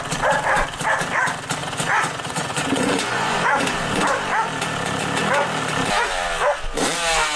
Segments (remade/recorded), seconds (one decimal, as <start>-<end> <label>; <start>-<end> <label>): 0.0-1.6 recorded; 1.6-4.0 remade; 4.0-7.4 recorded